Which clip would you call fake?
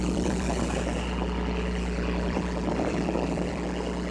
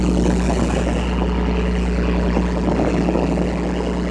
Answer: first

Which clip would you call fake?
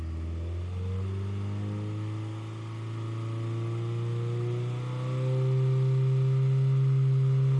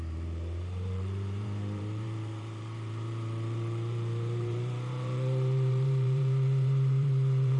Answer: second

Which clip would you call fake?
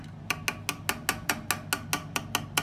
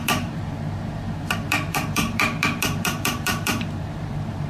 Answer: second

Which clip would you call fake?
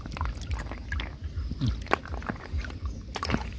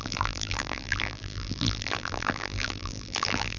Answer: second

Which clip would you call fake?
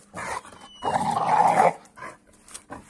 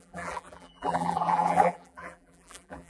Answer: second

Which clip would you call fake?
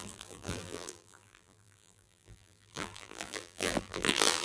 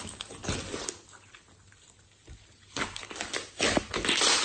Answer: first